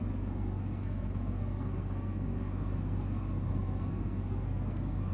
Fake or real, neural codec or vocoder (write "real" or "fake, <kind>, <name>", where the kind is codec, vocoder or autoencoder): fake, codec, SNAC